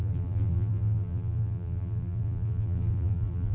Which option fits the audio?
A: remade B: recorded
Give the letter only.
A